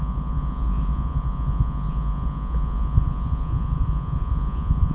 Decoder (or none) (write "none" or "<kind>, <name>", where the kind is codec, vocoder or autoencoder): vocoder, Vocos